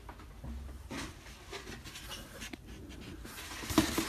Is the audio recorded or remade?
recorded